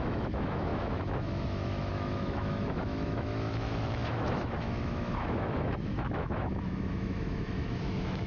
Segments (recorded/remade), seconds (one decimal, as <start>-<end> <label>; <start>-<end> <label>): 0.0-8.3 remade

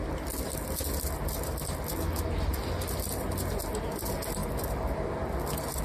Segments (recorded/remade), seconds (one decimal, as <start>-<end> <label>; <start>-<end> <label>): 0.0-5.8 recorded